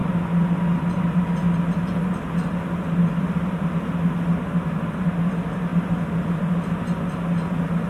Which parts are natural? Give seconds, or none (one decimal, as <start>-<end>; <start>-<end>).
0.0-7.9

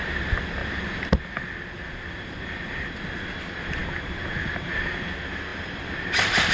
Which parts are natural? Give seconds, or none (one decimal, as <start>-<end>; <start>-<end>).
0.0-6.5

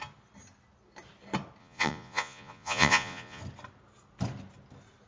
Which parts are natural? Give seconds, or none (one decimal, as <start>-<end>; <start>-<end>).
0.0-1.6; 3.4-5.1

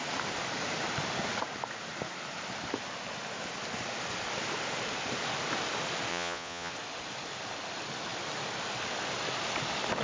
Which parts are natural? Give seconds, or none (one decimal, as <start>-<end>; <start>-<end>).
0.0-6.1; 6.7-10.0

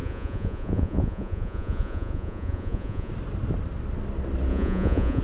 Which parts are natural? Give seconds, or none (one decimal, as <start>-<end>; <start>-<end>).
3.1-4.5